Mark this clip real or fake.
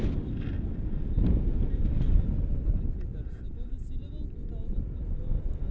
real